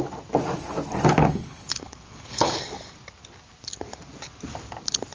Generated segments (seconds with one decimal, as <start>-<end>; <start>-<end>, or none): 1.2-2.6